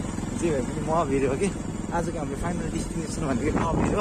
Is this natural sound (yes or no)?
yes